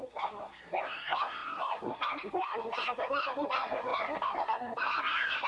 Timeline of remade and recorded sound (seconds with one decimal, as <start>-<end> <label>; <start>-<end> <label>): 0.0-5.5 remade

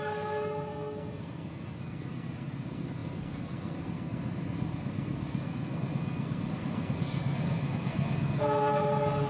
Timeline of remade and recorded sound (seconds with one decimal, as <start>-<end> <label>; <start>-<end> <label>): 0.0-9.3 remade

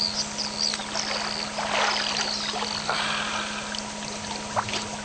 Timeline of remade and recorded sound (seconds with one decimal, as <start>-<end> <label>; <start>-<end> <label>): 0.0-5.0 recorded

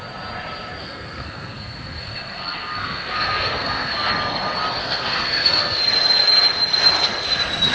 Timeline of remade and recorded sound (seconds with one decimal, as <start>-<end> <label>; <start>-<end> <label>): 0.0-0.8 recorded; 0.8-4.1 remade; 4.1-4.8 recorded; 4.8-5.8 remade; 5.8-7.7 recorded